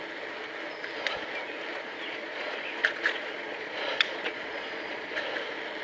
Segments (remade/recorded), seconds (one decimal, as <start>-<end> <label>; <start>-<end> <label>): 0.0-1.7 recorded; 1.7-5.2 remade; 5.2-5.8 recorded